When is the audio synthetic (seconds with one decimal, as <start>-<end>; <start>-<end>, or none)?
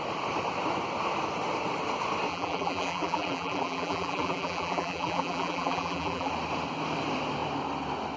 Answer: 2.3-6.3